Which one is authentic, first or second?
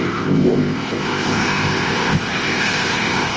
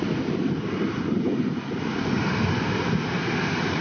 second